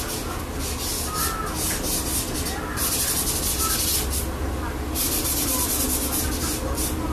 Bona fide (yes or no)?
yes